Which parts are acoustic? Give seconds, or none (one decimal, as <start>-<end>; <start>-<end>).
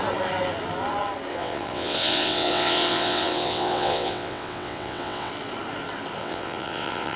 0.0-1.3; 5.3-6.2